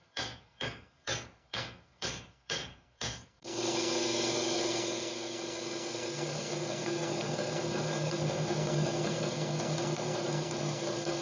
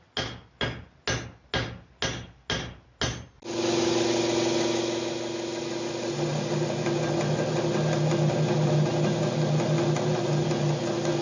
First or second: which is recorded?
second